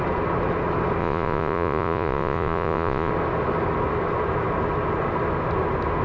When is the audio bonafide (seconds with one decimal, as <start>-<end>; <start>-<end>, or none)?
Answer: 0.0-1.0; 3.1-6.0